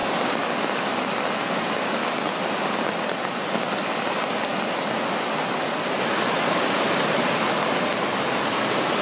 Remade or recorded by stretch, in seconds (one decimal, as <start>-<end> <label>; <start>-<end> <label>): 0.0-9.0 recorded